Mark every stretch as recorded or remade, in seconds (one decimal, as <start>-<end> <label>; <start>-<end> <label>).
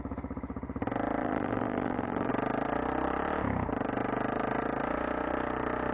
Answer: 0.0-1.2 recorded; 1.2-2.3 remade; 2.3-5.9 recorded